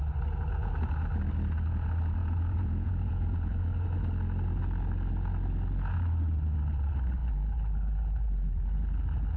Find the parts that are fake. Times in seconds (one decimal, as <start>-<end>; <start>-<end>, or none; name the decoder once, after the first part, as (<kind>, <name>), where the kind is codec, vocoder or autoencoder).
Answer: 2.2-3.6 (vocoder, Vocos)